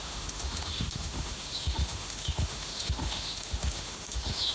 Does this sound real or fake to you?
fake